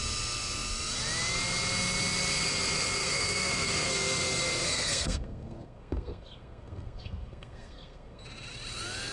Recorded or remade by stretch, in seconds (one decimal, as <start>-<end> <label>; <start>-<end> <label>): 0.0-3.0 recorded; 3.0-8.2 remade; 8.2-9.1 recorded